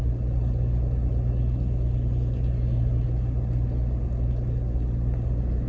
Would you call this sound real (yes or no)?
yes